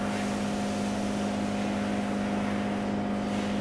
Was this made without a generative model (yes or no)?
yes